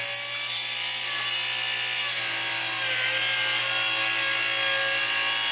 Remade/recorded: recorded